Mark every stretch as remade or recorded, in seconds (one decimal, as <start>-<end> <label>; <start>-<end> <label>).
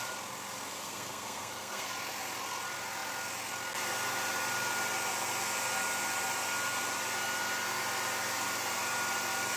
0.0-0.7 recorded; 0.7-1.9 remade; 1.9-9.6 recorded